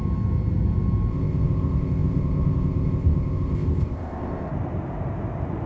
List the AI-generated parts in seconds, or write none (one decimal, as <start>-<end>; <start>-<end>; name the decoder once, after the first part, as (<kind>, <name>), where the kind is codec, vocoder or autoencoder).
1.1-4.5 (codec, ZipCodec)